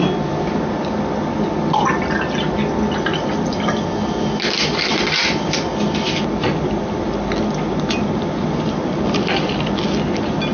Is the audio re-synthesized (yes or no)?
no